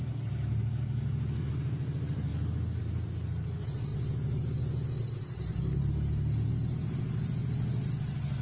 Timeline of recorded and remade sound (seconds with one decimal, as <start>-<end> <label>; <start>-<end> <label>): 0.0-2.3 remade; 2.3-2.8 recorded; 2.8-3.9 remade; 3.9-5.0 recorded; 5.0-8.4 remade